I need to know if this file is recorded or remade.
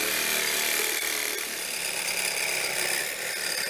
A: recorded